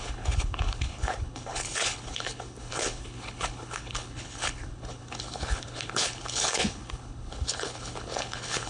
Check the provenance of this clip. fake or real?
fake